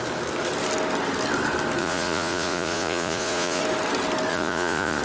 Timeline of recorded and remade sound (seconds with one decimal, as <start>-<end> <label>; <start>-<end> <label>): 0.0-1.8 recorded; 1.8-3.6 remade; 3.6-4.3 recorded; 4.3-5.0 remade